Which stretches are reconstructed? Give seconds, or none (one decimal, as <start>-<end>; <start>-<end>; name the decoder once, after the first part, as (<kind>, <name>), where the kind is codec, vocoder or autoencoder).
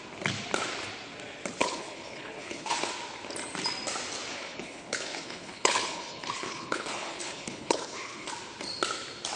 1.6-2.9 (codec, HILCodec); 4.3-8.3